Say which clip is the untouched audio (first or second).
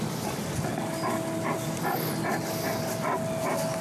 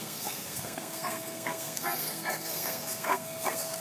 first